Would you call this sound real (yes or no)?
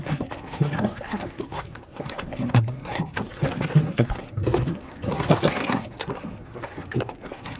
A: no